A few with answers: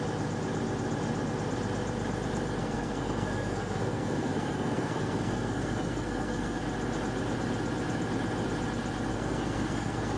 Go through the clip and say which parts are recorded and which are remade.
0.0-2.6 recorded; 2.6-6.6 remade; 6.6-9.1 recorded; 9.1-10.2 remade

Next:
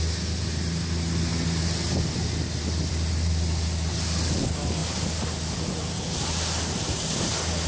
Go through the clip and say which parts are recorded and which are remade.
0.0-7.7 recorded